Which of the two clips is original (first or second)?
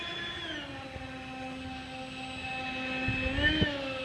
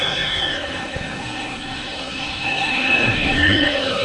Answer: first